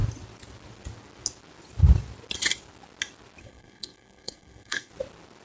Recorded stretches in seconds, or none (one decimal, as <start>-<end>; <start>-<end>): 0.0-3.4; 4.9-5.4